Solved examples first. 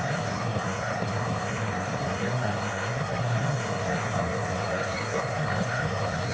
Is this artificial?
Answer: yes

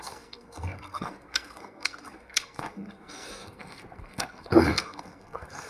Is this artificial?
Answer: yes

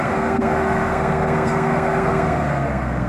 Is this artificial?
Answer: yes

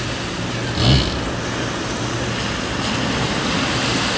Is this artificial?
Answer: no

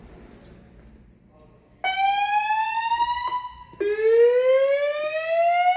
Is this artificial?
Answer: no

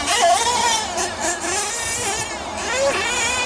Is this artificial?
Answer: no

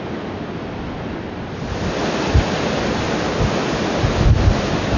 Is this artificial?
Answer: no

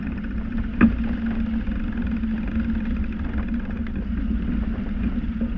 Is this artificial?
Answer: no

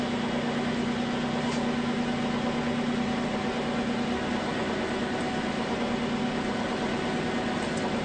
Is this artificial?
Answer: no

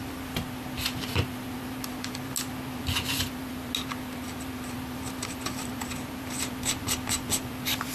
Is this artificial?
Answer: no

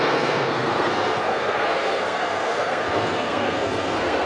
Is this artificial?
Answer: yes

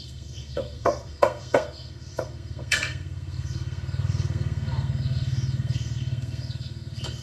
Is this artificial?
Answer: yes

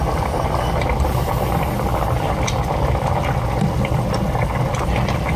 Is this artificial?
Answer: no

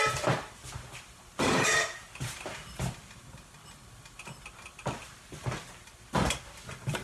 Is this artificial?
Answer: no